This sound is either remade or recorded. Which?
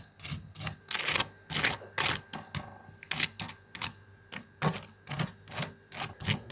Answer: recorded